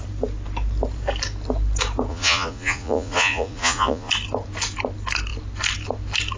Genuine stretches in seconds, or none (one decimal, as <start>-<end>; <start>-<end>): 0.0-2.1; 4.1-6.4